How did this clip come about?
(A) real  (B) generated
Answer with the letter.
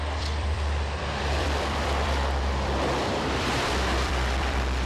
B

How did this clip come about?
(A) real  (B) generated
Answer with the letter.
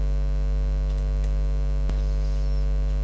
A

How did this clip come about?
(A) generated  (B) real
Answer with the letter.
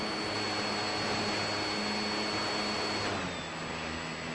B